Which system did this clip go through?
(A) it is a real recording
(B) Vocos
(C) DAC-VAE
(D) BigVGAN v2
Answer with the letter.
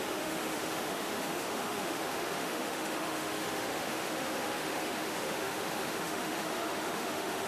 C